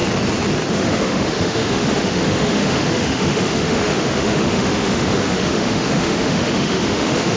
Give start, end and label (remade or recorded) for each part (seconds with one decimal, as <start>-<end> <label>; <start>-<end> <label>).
0.0-0.7 recorded; 0.7-7.4 remade